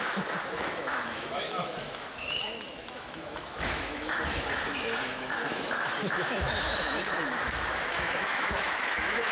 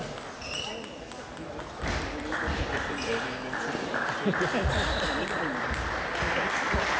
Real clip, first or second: second